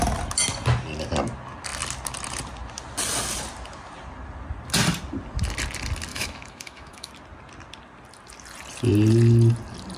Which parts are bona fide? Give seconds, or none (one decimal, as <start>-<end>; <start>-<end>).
0.0-6.1; 7.1-10.0